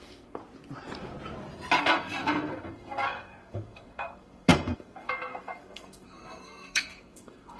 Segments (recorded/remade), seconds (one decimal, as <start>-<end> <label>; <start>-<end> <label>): 0.0-0.4 remade; 0.4-1.8 recorded; 1.8-7.6 remade